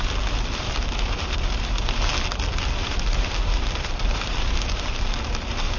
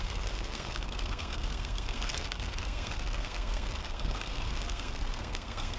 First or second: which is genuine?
first